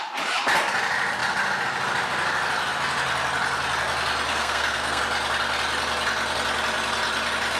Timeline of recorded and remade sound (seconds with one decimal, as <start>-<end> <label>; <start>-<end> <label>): 0.0-4.3 recorded; 4.3-5.0 remade; 5.0-7.6 recorded